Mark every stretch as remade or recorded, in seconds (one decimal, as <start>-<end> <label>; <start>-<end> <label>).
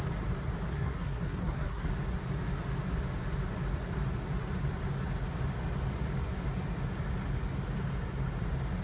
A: 0.0-0.7 recorded; 0.7-1.9 remade; 1.9-8.8 recorded